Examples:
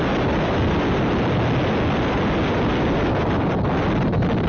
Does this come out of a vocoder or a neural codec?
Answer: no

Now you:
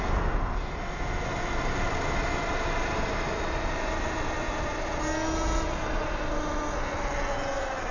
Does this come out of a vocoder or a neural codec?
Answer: no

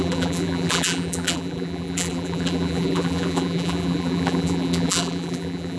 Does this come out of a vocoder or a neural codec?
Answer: yes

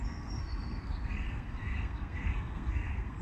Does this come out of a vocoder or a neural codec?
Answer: yes